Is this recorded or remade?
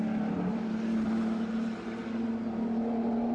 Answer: recorded